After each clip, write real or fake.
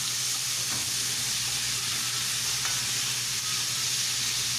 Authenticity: real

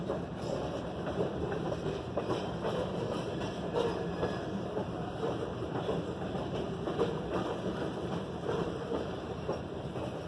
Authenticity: fake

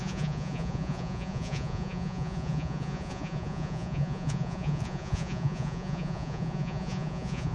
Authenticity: fake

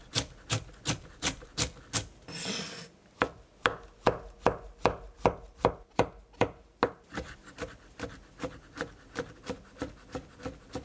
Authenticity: real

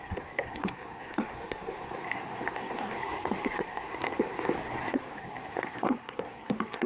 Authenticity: fake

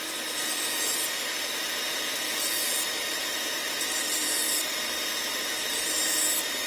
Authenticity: fake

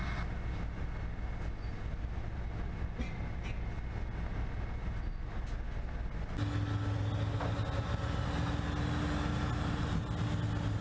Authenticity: real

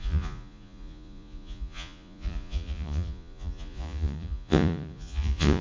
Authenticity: fake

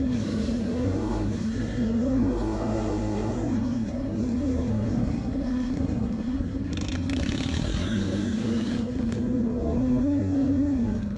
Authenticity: fake